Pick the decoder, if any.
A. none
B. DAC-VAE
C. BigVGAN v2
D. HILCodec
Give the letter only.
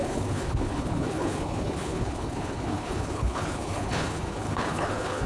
D